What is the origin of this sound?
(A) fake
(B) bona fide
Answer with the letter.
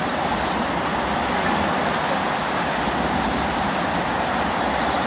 A